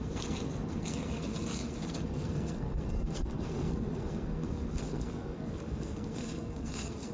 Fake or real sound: fake